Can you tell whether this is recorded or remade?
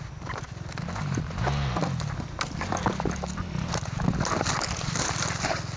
recorded